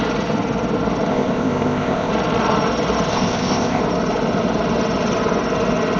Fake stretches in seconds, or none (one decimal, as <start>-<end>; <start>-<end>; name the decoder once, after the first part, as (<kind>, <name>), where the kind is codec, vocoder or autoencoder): 1.1-2.1 (codec, ZipCodec); 3.1-3.8